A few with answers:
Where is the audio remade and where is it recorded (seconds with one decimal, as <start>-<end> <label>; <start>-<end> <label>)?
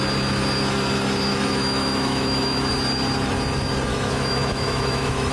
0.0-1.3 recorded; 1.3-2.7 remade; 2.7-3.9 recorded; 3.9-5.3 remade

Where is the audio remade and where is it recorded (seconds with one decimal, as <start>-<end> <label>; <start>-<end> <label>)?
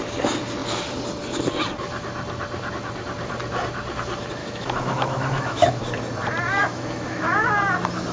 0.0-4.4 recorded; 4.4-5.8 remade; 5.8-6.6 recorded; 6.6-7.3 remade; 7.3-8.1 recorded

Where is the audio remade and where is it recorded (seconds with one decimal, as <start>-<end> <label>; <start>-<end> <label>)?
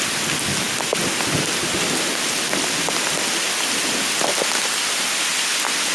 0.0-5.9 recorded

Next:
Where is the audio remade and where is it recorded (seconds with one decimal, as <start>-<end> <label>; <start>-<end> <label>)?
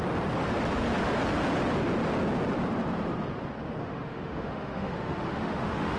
0.0-3.8 recorded; 3.8-6.0 remade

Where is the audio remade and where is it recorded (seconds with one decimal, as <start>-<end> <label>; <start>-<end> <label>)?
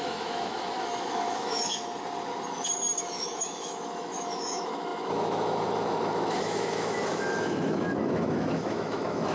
0.0-1.9 remade; 1.9-3.0 recorded; 3.0-9.3 remade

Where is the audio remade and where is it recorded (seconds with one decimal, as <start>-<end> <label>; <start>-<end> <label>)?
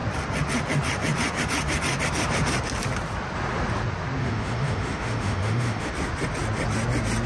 0.0-4.2 recorded; 4.2-5.9 remade; 5.9-7.3 recorded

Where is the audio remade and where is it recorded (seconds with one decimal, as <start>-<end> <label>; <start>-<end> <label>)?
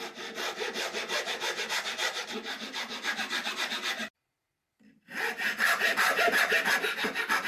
0.0-7.5 recorded